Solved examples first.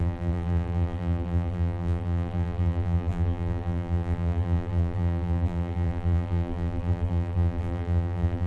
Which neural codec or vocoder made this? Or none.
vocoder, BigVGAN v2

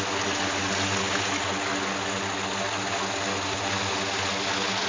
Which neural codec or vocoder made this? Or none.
none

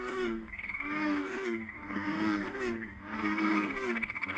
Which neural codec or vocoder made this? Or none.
codec, DAC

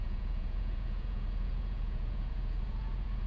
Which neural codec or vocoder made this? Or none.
vocoder, Vocos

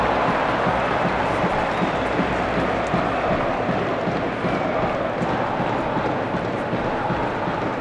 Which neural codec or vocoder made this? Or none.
none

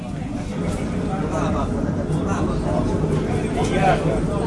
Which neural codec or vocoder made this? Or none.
none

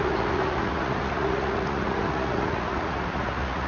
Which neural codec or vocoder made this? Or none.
vocoder, Vocos